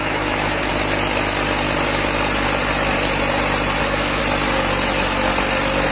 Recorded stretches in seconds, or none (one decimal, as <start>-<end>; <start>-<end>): 0.7-3.8; 4.2-5.9